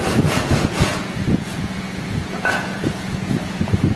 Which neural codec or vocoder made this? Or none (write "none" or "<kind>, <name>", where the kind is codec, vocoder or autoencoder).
vocoder, Vocos